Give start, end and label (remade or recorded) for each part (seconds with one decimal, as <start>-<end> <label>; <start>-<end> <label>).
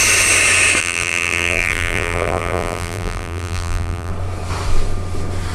0.0-0.8 recorded; 0.8-4.1 remade; 4.1-5.5 recorded